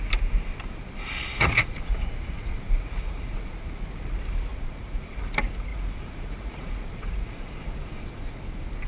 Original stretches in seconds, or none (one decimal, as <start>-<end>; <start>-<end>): 0.0-1.3; 3.8-4.5; 5.2-5.7; 8.4-8.9